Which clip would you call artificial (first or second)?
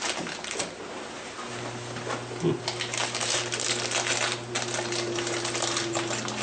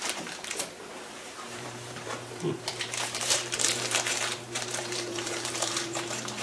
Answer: second